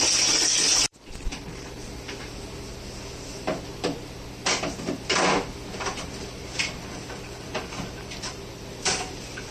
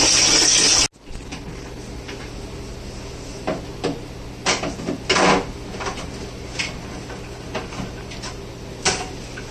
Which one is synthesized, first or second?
first